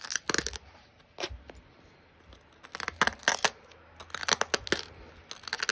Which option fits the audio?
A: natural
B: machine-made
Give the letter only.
A